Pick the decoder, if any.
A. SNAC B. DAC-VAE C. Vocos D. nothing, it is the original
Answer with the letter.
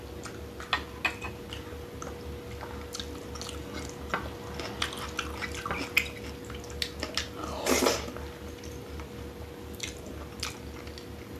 D